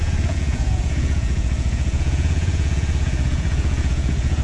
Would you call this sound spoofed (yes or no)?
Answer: yes